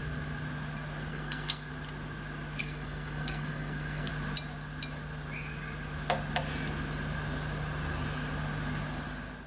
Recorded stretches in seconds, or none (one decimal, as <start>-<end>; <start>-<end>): 0.0-1.1; 1.7-2.6; 4.1-9.5